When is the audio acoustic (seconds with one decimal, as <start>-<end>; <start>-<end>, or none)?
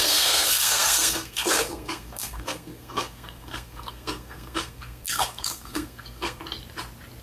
6.4-7.2